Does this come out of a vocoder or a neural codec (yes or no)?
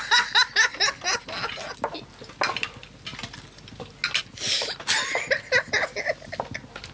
no